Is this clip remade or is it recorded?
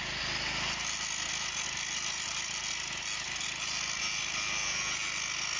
recorded